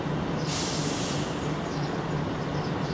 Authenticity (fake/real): fake